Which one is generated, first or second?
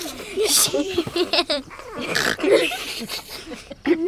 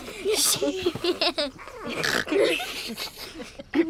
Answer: first